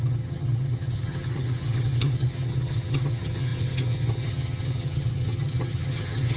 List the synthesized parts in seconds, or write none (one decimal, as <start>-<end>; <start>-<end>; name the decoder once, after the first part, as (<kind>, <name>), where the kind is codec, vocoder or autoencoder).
0.0-6.4 (vocoder, HiFi-GAN)